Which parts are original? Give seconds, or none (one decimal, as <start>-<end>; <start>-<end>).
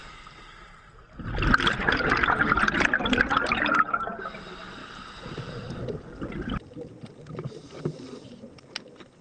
0.0-9.2